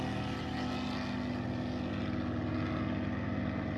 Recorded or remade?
recorded